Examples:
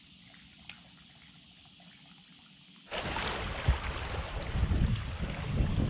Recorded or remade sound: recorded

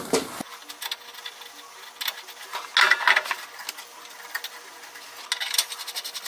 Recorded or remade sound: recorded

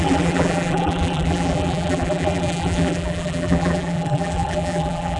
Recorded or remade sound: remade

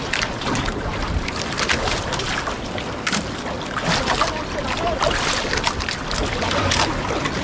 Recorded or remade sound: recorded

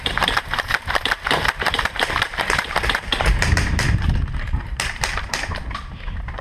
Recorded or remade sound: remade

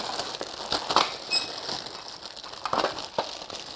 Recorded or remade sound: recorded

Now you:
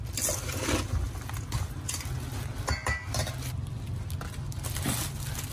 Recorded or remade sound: recorded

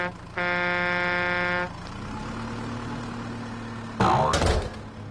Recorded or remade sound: recorded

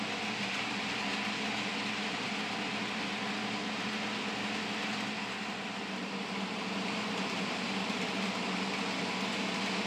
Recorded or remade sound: recorded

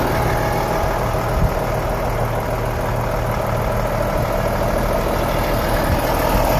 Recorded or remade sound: recorded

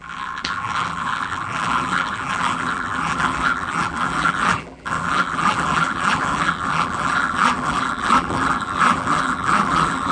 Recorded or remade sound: remade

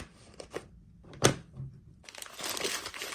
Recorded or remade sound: remade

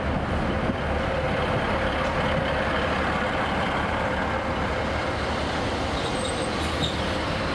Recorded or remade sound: recorded